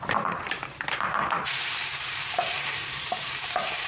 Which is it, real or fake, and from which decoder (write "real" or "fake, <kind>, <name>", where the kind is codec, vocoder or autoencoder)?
fake, vocoder, BigVGAN v2